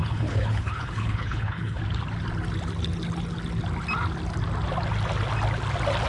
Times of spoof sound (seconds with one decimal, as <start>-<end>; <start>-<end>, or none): 0.0-1.8